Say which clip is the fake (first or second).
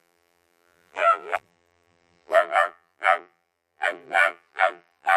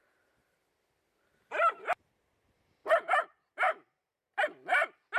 first